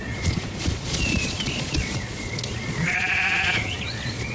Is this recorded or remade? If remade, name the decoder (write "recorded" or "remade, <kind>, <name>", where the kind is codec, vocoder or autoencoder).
remade, vocoder, Vocos